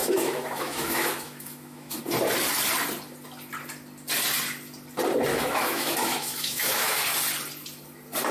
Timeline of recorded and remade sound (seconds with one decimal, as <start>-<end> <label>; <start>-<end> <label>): 0.0-2.0 remade; 2.0-5.3 recorded; 5.3-7.0 remade; 7.0-8.3 recorded